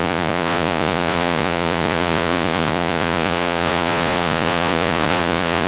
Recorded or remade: remade